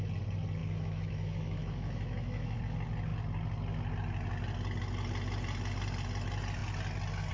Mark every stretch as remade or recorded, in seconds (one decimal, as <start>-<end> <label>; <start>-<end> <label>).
0.0-0.6 recorded; 0.6-2.6 remade; 2.6-7.3 recorded